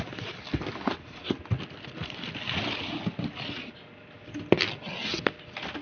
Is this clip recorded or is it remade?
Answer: recorded